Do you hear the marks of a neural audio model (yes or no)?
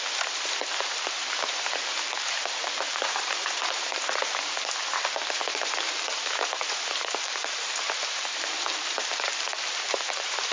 yes